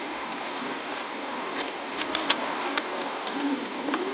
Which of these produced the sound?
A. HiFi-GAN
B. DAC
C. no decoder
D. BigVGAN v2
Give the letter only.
B